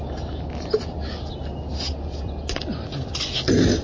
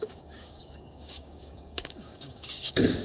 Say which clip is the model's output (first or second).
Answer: second